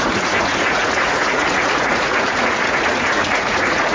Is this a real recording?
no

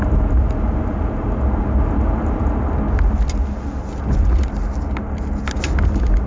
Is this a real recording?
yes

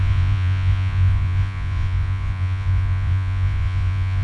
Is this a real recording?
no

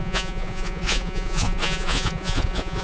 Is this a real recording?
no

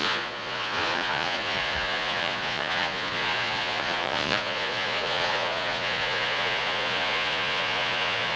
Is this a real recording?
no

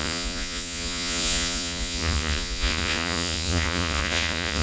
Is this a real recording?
no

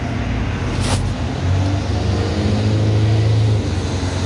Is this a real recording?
yes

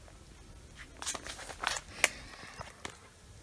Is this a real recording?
yes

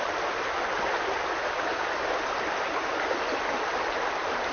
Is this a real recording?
yes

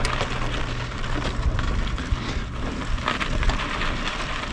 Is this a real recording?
yes